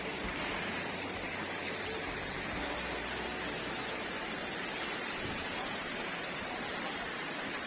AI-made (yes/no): yes